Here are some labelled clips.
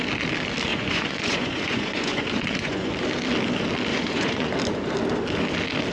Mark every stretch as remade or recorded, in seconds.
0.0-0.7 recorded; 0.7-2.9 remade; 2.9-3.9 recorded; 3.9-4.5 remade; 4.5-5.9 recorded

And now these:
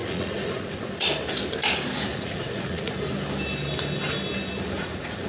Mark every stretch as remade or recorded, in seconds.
0.0-1.1 remade; 1.1-2.1 recorded; 2.1-2.9 remade; 2.9-4.8 recorded; 4.8-5.3 remade

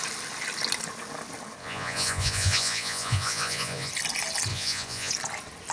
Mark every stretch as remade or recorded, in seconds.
0.0-1.6 recorded; 1.6-3.9 remade; 3.9-4.5 recorded; 4.5-5.1 remade; 5.1-5.7 recorded

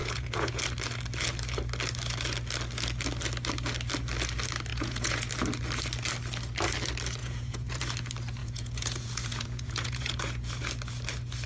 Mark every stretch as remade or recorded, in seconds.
0.0-0.6 remade; 0.6-4.7 recorded; 4.7-5.3 remade; 5.3-7.2 recorded; 7.2-7.8 remade; 7.8-8.4 recorded; 8.4-10.6 remade; 10.6-11.5 recorded

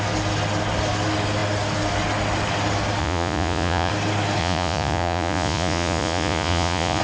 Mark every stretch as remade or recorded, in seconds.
0.0-3.0 recorded; 3.0-3.9 remade; 3.9-4.4 recorded; 4.4-7.0 remade